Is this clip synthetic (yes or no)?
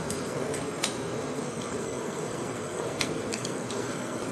yes